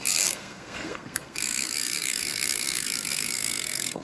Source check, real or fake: fake